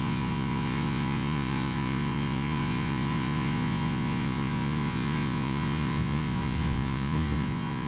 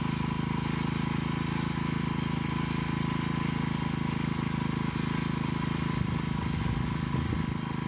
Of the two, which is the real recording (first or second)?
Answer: second